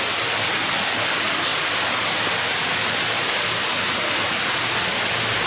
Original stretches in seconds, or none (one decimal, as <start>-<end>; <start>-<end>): 0.0-5.5